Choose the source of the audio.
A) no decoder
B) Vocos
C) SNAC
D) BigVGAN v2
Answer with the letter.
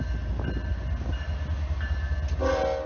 A